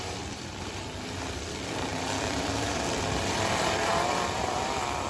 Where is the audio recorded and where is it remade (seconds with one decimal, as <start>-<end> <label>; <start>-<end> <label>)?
0.0-5.1 remade